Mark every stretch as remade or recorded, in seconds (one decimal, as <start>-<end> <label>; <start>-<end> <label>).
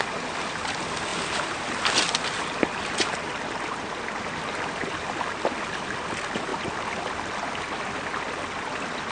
0.0-9.1 recorded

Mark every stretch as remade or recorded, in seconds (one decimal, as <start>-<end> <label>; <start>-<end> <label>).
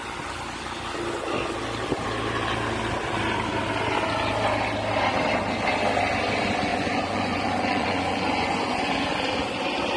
0.0-6.7 recorded; 6.7-8.9 remade; 8.9-10.0 recorded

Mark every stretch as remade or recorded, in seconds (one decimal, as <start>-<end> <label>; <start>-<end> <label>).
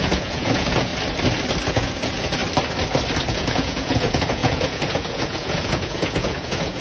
0.0-0.9 remade; 0.9-1.7 recorded; 1.7-2.4 remade; 2.4-3.3 recorded; 3.3-6.8 remade